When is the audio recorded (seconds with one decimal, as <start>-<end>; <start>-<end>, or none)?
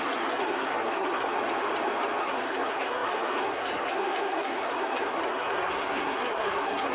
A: 1.4-2.2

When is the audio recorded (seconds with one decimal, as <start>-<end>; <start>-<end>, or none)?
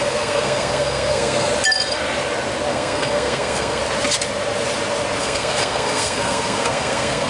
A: 1.5-2.7; 3.8-5.2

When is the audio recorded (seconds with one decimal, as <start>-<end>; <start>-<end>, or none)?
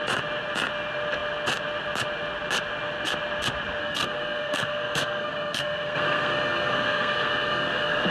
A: 0.0-3.8